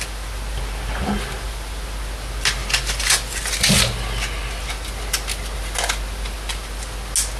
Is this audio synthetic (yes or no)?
no